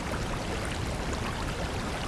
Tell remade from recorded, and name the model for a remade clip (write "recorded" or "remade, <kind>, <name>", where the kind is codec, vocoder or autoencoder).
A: recorded